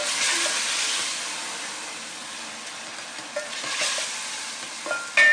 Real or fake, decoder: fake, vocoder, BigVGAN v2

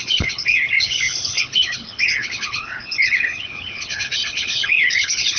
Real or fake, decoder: fake, codec, HILCodec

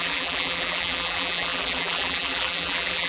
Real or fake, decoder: fake, vocoder, BigVGAN v2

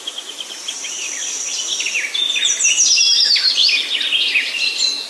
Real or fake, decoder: real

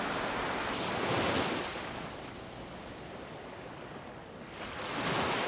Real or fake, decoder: real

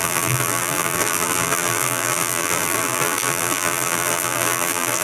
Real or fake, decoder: fake, vocoder, BigVGAN v2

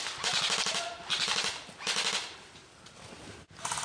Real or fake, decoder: real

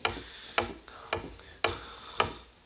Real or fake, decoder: real